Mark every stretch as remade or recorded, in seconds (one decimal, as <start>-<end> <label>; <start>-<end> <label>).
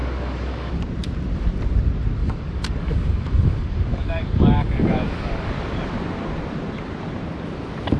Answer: 0.0-0.8 remade; 0.8-2.2 recorded; 2.2-5.5 remade; 5.5-8.0 recorded